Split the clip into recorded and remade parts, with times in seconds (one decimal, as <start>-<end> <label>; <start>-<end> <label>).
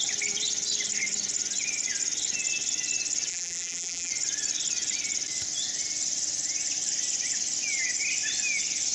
0.0-3.3 recorded; 3.3-4.1 remade; 4.1-8.9 recorded